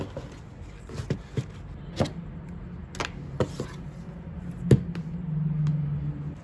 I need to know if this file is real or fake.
real